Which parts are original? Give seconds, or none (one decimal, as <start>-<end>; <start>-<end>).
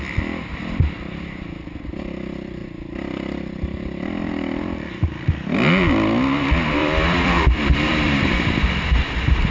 0.0-2.6; 4.9-6.8; 8.7-9.5